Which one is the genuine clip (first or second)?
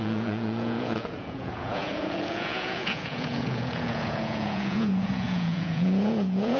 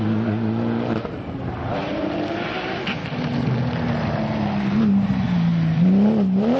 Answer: second